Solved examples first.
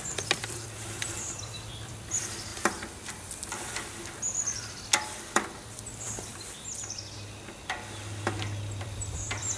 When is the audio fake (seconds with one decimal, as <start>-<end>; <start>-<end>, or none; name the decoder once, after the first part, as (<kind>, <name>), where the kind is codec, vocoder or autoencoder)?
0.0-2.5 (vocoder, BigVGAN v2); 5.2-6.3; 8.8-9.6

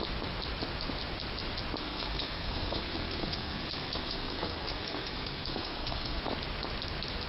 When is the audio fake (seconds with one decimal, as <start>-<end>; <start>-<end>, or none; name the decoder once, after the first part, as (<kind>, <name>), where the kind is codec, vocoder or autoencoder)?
1.8-6.2 (codec, SNAC)

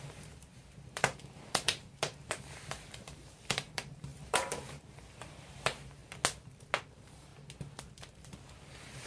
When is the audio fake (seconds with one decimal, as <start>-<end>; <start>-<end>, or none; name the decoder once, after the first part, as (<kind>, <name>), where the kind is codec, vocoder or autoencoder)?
0.0-6.0 (vocoder, BigVGAN v2); 6.8-7.3; 7.9-9.1

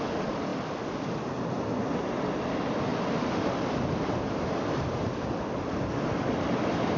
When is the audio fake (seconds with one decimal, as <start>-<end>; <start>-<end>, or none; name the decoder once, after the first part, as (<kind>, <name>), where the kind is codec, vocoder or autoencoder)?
none

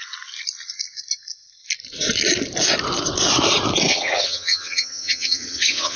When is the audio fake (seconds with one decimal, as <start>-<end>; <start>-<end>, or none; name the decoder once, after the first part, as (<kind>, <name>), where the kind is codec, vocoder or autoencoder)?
3.9-6.0 (vocoder, HiFi-GAN)

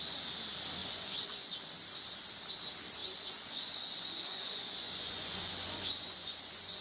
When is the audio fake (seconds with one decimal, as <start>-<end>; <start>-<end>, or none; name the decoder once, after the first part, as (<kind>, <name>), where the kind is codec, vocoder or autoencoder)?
0.8-1.5 (vocoder, Vocos); 3.0-6.8

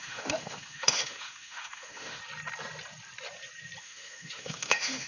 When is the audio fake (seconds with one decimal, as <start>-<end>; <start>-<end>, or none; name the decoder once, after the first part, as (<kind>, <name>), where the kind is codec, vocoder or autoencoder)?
0.0-2.2 (autoencoder, DAC-VAE); 3.8-5.1

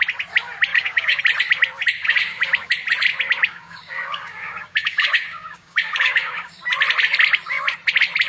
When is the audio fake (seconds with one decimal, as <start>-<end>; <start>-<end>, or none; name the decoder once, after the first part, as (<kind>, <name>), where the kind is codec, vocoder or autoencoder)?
0.7-1.2 (codec, DAC); 2.0-2.7; 3.4-6.6